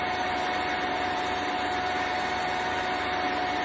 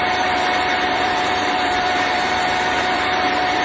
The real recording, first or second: first